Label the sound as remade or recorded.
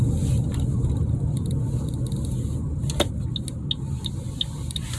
recorded